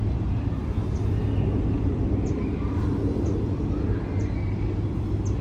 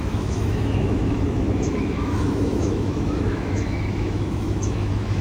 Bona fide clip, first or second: first